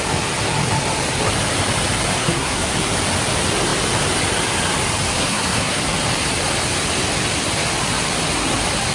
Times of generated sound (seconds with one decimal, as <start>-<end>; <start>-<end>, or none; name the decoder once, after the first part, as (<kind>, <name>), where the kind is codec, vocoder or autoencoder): 2.2-2.7 (codec, SNAC); 5.1-5.8